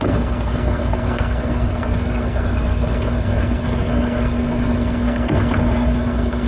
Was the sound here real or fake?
fake